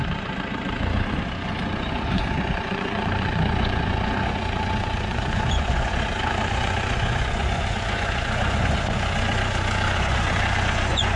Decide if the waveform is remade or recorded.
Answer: remade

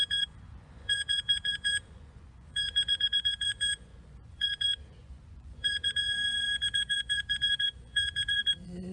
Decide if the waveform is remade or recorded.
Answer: remade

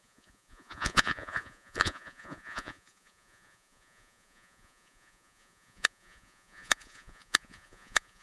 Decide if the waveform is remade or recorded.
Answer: remade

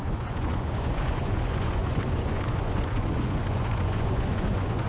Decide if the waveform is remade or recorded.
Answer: remade